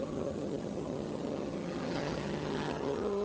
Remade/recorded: remade